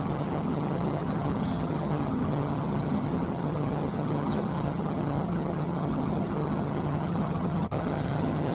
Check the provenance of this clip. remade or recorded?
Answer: remade